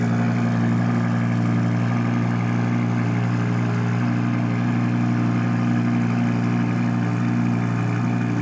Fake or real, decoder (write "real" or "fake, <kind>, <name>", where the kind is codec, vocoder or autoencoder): real